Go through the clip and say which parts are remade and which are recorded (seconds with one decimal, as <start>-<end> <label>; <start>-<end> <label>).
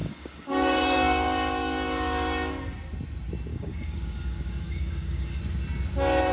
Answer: 0.0-2.5 remade; 2.5-3.5 recorded; 3.5-5.4 remade; 5.4-6.3 recorded